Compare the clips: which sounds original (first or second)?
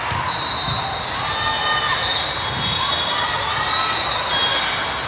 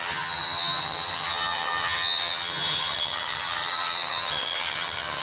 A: first